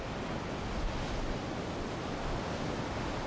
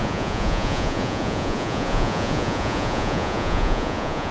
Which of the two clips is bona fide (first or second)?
first